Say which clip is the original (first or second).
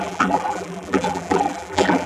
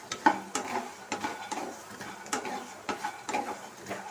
second